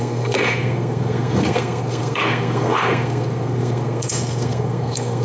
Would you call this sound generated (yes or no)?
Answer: yes